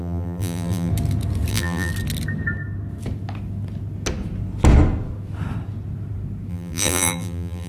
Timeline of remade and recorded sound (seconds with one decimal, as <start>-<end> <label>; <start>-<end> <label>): 0.0-0.9 remade; 0.9-1.5 recorded; 1.5-1.9 remade; 1.9-6.5 recorded; 6.5-7.7 remade